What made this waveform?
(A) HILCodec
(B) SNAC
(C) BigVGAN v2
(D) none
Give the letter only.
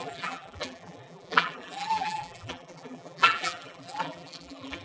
C